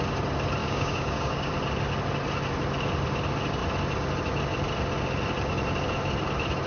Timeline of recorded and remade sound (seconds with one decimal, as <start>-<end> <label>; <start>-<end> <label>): 0.0-0.6 recorded; 0.6-1.5 remade; 1.5-6.7 recorded